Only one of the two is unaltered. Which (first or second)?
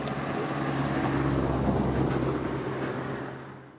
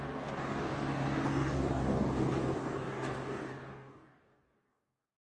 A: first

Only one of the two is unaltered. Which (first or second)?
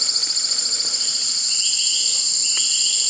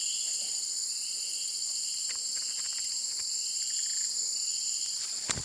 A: first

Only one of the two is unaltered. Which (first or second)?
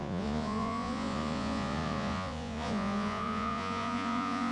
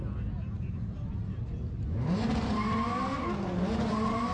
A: second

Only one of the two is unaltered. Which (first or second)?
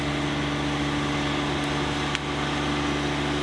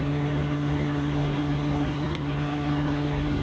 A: first